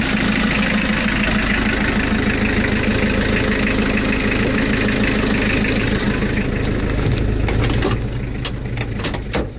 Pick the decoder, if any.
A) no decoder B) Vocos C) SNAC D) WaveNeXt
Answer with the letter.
A